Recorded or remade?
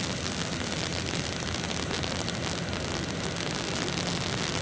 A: recorded